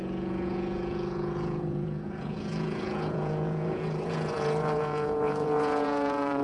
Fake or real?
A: fake